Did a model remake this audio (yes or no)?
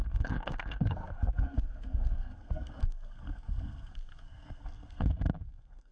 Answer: yes